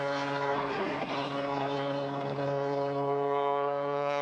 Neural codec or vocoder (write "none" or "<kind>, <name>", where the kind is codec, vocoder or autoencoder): codec, SNAC